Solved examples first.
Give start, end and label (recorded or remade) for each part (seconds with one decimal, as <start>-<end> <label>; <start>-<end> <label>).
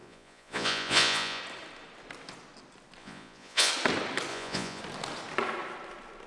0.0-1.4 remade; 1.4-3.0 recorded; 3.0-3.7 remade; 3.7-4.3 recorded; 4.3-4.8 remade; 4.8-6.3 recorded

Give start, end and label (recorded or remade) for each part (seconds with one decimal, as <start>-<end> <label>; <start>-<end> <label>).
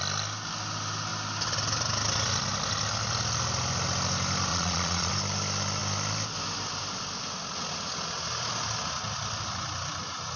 0.0-4.5 recorded; 4.5-5.1 remade; 5.1-10.4 recorded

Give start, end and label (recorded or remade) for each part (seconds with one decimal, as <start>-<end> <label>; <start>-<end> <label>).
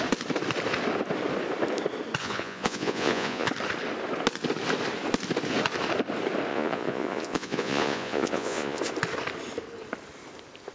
0.0-2.2 recorded; 2.2-3.5 remade; 3.5-6.5 recorded; 6.5-8.8 remade; 8.8-10.7 recorded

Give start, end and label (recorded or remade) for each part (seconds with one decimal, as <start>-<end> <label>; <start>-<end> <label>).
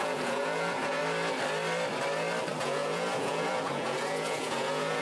0.0-1.0 remade; 1.0-2.6 recorded; 2.6-5.0 remade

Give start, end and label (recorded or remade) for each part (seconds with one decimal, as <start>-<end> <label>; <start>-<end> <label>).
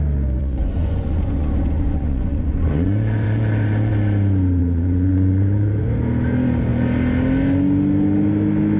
0.0-0.4 recorded; 0.4-3.9 remade; 3.9-4.6 recorded; 4.6-5.9 remade; 5.9-8.8 recorded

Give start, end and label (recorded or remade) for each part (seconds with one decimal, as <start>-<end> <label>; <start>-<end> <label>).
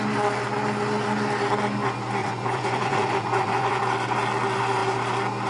0.0-2.2 recorded; 2.2-3.8 remade; 3.8-5.5 recorded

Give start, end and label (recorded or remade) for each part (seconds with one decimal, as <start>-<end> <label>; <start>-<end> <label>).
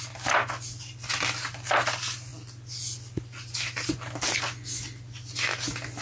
0.0-6.0 recorded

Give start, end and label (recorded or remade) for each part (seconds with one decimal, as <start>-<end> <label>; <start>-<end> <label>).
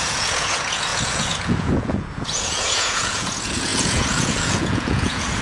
0.0-5.4 remade